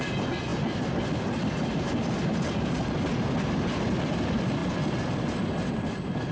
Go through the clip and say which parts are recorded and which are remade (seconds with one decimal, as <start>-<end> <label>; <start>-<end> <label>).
0.0-0.5 remade; 0.5-3.4 recorded; 3.4-4.6 remade; 4.6-5.7 recorded; 5.7-6.3 remade